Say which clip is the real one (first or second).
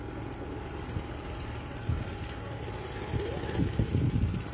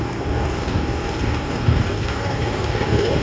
first